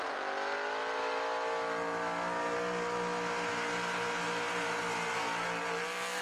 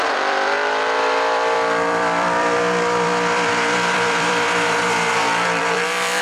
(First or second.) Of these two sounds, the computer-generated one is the second